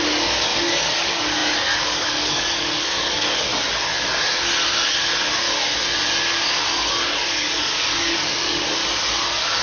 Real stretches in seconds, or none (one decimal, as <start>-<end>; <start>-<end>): 3.5-6.9; 8.8-9.6